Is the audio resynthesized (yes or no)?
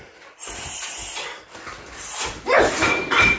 yes